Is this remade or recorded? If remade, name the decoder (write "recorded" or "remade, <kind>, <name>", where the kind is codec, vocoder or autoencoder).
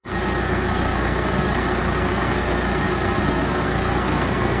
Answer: remade, codec, SNAC